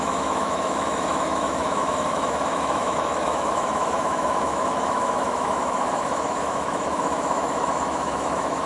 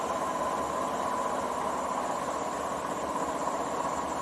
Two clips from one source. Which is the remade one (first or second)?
first